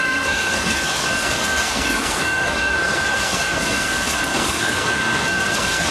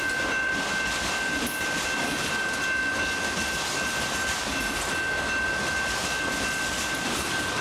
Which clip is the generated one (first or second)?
first